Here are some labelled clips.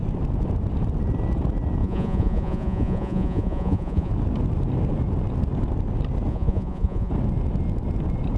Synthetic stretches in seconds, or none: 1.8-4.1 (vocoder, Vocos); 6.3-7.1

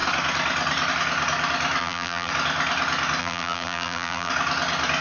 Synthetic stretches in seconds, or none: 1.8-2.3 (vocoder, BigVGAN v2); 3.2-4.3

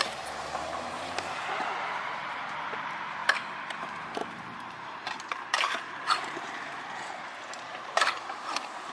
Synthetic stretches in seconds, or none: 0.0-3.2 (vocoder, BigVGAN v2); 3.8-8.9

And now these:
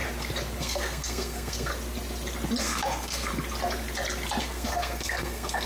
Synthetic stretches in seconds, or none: 0.6-1.7 (codec, SNAC); 2.6-3.3; 4.4-5.7